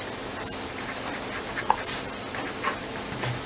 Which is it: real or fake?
real